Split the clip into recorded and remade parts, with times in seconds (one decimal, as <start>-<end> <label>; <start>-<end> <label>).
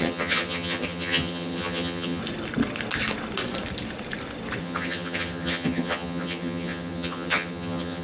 0.0-2.2 remade; 2.2-4.6 recorded; 4.6-8.0 remade